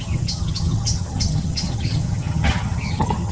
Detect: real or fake fake